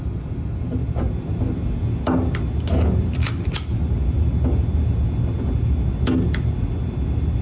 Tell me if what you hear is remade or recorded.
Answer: recorded